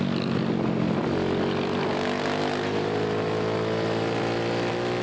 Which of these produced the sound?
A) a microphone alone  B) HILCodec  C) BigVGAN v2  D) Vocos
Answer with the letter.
A